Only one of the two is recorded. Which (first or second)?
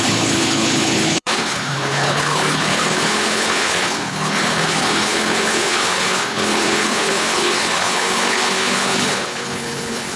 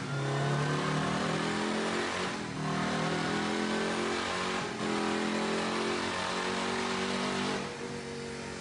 second